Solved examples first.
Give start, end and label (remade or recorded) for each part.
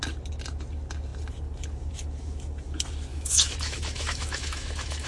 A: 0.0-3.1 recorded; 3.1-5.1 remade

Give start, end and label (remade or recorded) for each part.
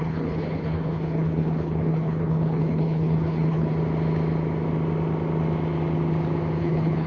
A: 0.0-3.7 remade; 3.7-6.6 recorded; 6.6-7.1 remade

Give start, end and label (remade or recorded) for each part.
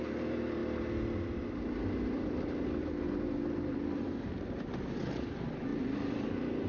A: 0.0-5.7 recorded; 5.7-6.3 remade; 6.3-6.7 recorded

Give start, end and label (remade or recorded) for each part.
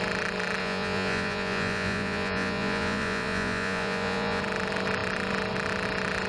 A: 0.0-0.6 recorded; 0.6-4.4 remade; 4.4-6.3 recorded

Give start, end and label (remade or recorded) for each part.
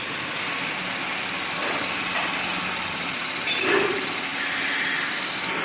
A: 0.0-5.6 recorded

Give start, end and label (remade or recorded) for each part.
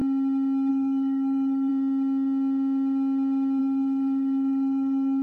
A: 0.0-0.7 recorded; 0.7-1.7 remade; 1.7-3.6 recorded; 3.6-5.2 remade